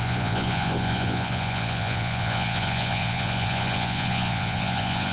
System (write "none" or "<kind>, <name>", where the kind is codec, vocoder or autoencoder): vocoder, Vocos